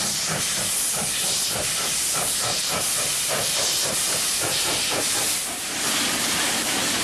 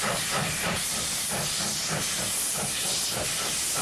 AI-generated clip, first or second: first